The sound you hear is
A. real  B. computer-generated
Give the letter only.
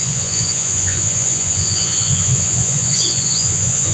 B